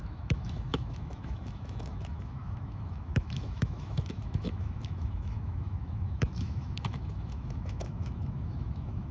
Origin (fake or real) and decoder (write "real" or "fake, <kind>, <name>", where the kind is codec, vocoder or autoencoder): fake, autoencoder, DAC-VAE